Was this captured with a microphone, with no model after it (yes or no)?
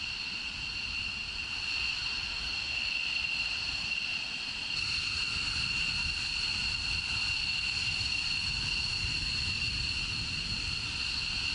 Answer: yes